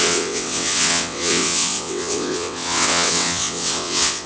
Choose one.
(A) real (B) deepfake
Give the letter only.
B